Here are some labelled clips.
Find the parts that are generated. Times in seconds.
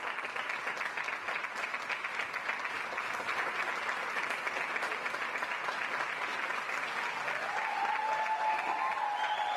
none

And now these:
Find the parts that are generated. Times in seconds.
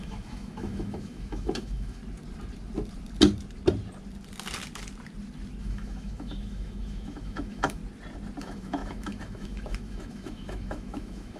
0.0-2.0; 5.6-7.8; 8.4-11.4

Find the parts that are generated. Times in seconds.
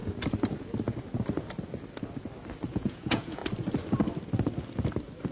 2.7-3.4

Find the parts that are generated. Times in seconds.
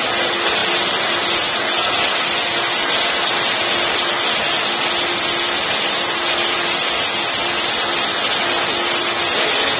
none